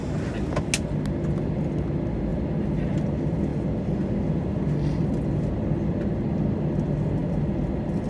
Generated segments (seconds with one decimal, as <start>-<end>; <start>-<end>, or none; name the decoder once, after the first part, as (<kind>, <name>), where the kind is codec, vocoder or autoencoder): none